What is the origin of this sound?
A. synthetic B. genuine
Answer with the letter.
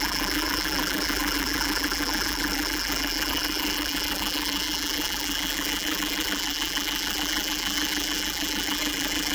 A